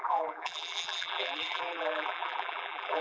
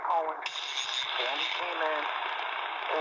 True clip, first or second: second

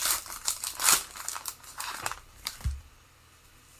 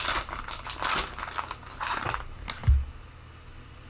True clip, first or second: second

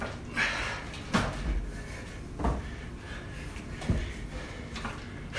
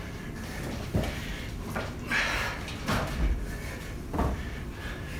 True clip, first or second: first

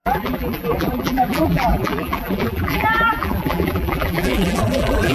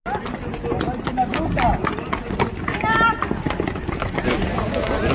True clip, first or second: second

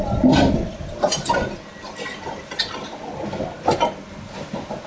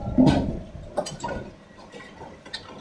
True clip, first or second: first